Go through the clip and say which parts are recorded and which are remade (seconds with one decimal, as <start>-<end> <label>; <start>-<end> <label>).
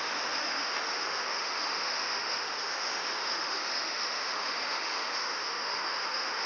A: 0.0-6.5 remade